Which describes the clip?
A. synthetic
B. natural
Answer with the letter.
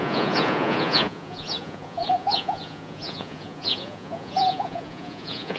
A